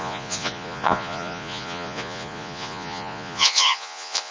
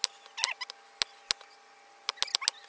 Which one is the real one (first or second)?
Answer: second